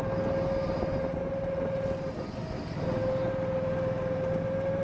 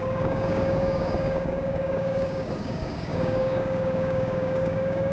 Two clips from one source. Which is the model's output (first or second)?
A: second